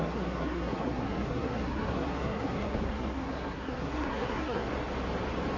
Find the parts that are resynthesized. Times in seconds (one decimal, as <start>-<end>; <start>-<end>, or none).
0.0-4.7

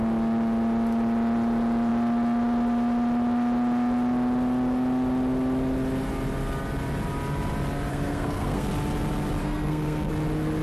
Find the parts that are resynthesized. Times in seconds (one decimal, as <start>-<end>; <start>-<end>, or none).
7.9-8.7; 9.4-10.1

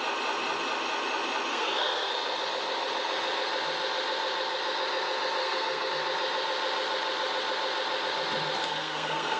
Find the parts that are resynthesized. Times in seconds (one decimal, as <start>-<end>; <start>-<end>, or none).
1.5-2.1; 5.4-5.9; 8.6-9.4

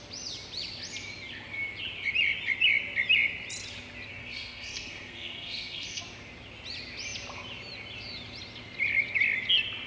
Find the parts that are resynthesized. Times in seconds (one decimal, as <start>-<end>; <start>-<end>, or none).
4.2-6.0

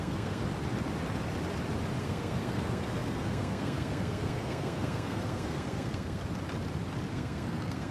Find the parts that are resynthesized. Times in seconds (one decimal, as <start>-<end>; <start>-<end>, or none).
0.0-0.4; 2.0-6.2; 7.1-7.9

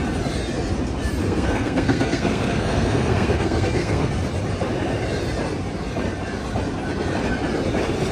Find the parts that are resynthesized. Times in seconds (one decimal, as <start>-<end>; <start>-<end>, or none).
1.2-4.1

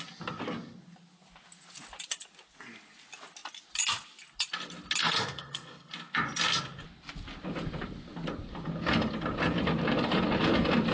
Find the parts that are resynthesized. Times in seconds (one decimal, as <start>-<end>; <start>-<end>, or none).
5.0-5.9

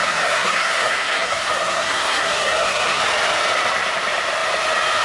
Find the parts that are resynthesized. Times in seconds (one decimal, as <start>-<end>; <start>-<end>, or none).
0.0-3.0